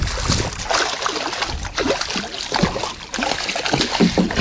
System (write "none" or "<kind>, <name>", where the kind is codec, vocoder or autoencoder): none